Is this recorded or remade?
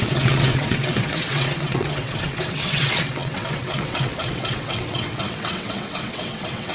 remade